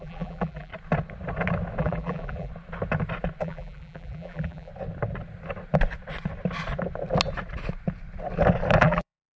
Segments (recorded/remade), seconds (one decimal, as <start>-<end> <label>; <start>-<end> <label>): 0.0-0.7 remade; 0.7-1.8 recorded; 1.8-2.5 remade; 2.5-3.4 recorded; 3.4-4.7 remade; 4.7-8.8 recorded; 8.8-9.4 remade